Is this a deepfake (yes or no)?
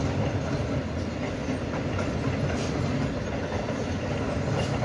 no